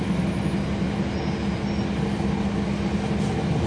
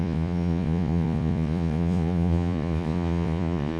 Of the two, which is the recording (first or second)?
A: first